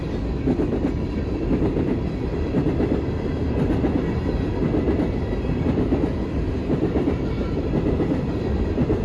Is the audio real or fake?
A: real